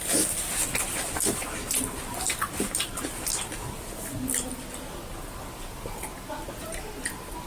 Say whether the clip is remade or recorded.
recorded